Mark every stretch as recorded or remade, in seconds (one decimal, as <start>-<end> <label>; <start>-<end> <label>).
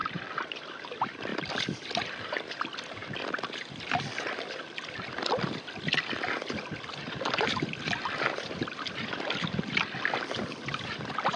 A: 0.0-1.3 remade; 1.3-2.1 recorded; 2.1-3.0 remade; 3.0-5.2 recorded; 5.2-11.4 remade